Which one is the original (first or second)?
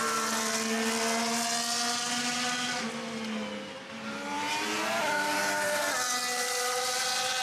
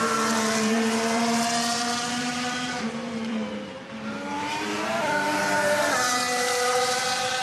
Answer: first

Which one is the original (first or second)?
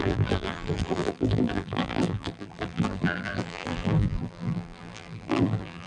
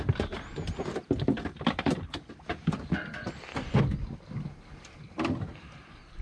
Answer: second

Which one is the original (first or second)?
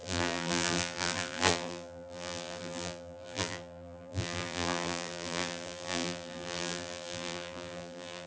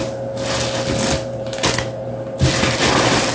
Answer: second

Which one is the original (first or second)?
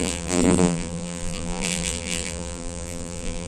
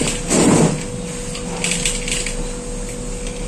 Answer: second